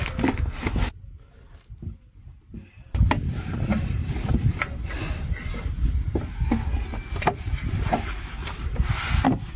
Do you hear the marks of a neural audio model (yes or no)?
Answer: no